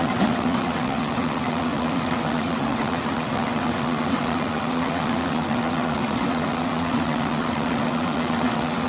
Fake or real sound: fake